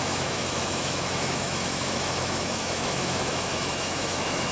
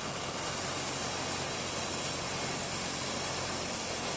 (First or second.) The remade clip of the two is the first